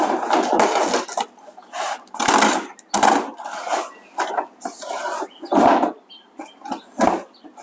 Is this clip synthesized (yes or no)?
no